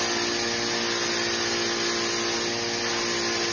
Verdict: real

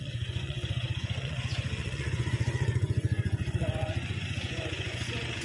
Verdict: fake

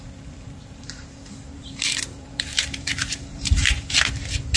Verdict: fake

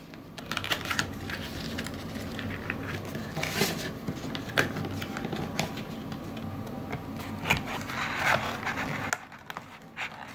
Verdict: real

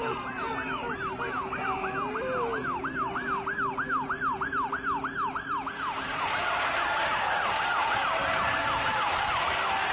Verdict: real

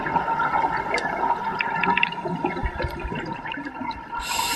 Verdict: fake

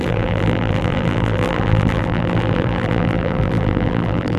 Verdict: fake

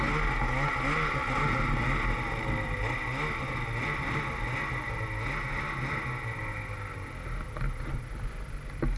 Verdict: real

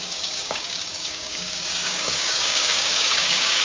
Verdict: fake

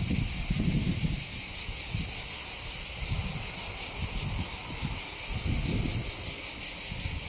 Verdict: real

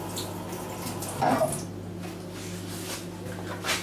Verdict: real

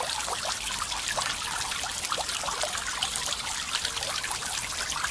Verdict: real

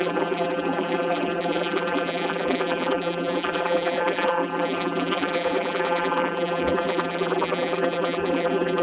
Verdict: fake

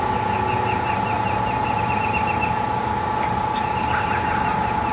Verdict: real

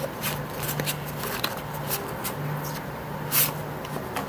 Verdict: fake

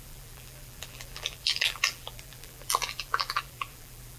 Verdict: fake